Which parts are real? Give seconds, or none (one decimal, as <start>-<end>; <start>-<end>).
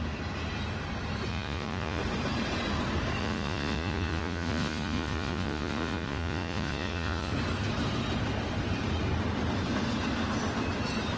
0.0-1.3; 2.0-3.2; 7.3-11.2